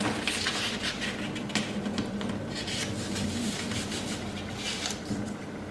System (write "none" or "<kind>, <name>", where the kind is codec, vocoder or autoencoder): none